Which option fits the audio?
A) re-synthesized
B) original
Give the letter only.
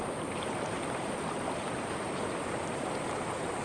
A